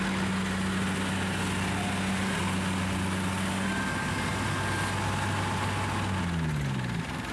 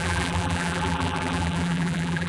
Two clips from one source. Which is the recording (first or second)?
first